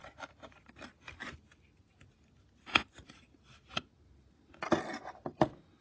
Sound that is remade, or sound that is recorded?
recorded